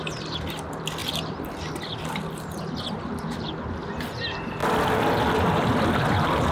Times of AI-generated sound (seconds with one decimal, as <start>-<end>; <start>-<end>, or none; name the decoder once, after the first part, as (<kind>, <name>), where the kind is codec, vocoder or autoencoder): none